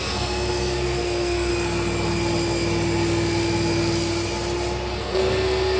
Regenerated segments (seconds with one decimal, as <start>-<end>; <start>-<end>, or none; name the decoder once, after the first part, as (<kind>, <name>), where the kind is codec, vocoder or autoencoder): 0.0-1.5 (codec, SNAC); 5.0-5.8